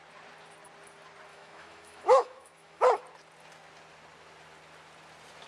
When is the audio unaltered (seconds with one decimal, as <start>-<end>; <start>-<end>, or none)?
0.0-1.3; 3.0-5.5